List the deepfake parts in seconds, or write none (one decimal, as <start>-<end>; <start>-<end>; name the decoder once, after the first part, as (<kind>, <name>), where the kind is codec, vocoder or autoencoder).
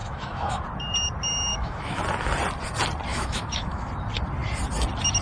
0.0-0.6 (autoencoder, DAC-VAE); 1.5-2.0; 3.1-3.9